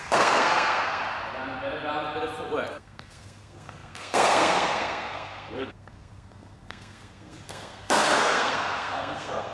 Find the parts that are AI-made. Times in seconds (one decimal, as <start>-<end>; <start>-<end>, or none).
0.0-1.0; 2.7-9.5